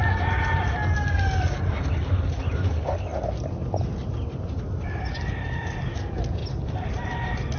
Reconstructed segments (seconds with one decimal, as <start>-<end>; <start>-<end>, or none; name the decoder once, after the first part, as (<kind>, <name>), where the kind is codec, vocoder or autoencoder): none